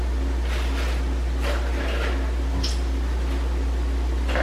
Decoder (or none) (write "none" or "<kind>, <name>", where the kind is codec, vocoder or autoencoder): none